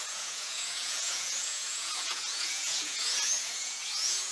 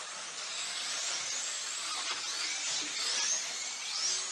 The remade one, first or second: first